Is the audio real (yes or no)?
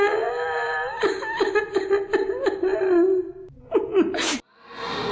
yes